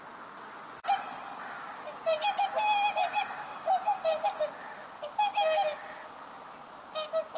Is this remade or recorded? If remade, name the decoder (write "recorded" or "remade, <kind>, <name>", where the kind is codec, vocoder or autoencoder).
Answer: recorded